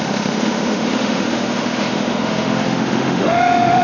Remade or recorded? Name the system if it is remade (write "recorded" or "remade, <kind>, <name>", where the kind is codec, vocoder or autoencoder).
remade, autoencoder, DAC-VAE